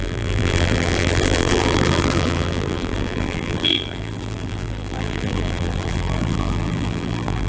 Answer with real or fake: fake